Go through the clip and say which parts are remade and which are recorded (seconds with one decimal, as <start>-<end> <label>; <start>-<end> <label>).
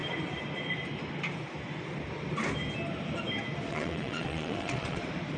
0.0-3.7 recorded; 3.7-5.0 remade; 5.0-5.4 recorded